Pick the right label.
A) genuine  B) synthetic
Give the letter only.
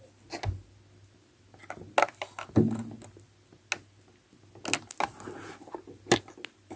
A